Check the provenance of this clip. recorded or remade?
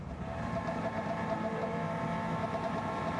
remade